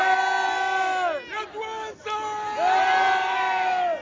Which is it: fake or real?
real